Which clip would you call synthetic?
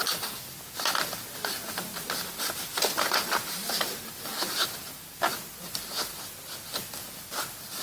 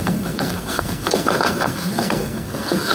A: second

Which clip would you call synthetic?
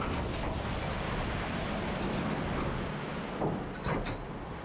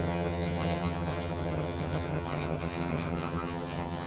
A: second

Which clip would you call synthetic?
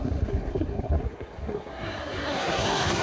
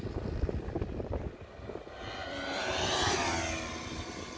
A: first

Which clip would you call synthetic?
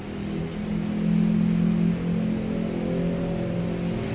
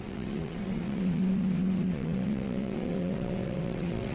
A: second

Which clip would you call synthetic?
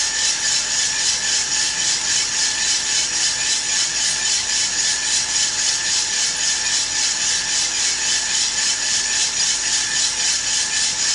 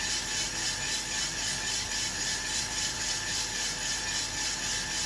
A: first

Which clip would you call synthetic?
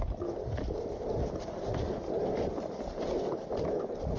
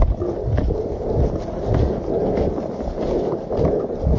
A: first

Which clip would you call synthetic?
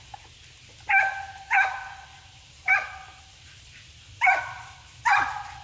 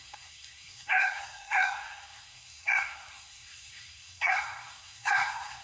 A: second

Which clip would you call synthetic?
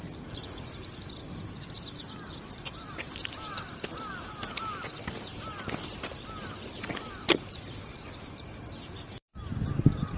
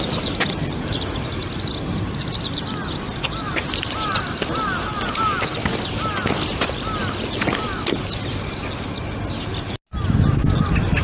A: first